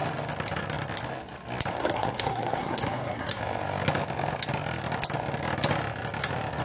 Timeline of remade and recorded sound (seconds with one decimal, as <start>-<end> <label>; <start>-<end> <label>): 0.0-1.8 recorded; 1.8-3.4 remade; 3.4-6.6 recorded